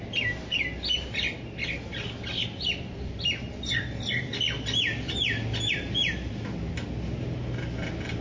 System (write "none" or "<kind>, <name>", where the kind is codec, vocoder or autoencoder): none